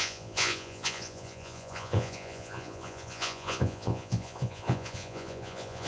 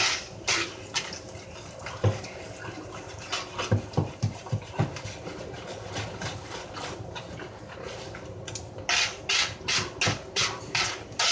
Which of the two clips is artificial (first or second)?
first